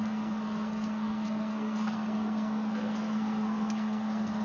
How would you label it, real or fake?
fake